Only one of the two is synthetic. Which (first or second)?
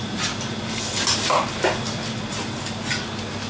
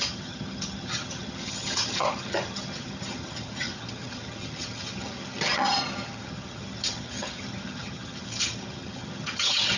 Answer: second